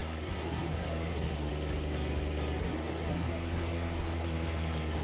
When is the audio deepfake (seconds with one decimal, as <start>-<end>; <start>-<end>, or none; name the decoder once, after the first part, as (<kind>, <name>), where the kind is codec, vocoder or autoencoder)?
0.0-1.5 (codec, SNAC); 2.6-5.0